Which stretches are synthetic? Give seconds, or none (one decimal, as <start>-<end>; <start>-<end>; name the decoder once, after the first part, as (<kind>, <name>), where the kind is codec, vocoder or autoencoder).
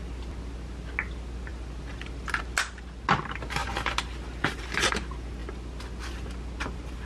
none